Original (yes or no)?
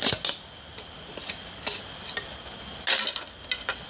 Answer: yes